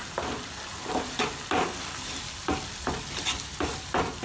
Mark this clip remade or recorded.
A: recorded